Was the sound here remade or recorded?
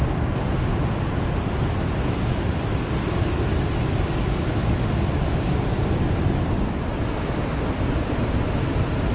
recorded